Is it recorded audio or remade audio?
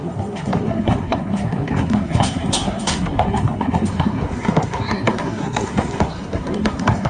remade